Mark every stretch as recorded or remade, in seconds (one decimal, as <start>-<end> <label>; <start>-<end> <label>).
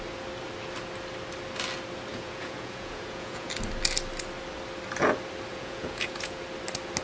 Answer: 0.0-2.1 recorded; 2.1-3.5 remade; 3.5-5.5 recorded; 5.5-6.4 remade; 6.4-7.0 recorded